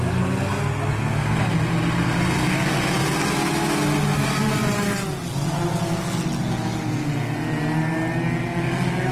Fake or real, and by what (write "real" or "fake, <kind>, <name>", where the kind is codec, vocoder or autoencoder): real